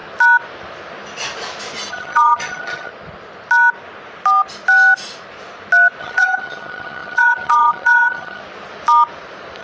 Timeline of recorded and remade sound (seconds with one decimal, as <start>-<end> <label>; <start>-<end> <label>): 0.0-1.9 recorded; 1.9-2.9 remade; 2.9-6.0 recorded; 6.0-8.4 remade; 8.4-9.6 recorded